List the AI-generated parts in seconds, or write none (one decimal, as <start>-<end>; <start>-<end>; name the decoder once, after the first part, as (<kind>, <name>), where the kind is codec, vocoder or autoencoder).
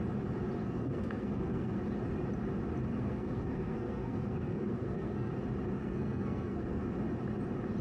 0.6-1.8 (codec, SNAC); 2.9-5.3; 5.8-6.8